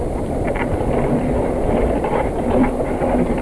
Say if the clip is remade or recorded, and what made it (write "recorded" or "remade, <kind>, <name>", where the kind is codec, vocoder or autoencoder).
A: remade, vocoder, BigVGAN v2